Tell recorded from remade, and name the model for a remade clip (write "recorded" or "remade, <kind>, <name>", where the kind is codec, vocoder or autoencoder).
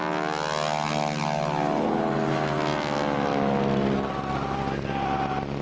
recorded